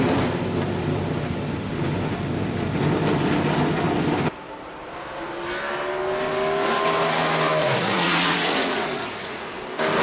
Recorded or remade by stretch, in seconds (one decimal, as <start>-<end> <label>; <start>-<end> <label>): 0.0-7.6 recorded; 7.6-9.5 remade; 9.5-10.0 recorded